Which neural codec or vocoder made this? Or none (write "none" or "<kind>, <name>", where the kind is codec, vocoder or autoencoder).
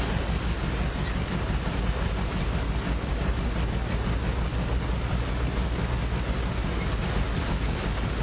none